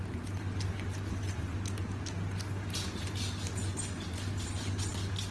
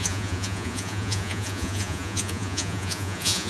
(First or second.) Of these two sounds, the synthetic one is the second